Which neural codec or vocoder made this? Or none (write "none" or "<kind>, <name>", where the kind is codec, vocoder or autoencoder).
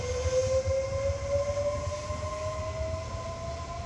none